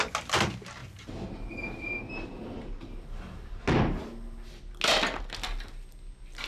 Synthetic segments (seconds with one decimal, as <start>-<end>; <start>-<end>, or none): 0.8-3.6